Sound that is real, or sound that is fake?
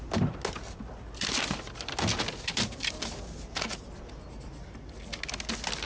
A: real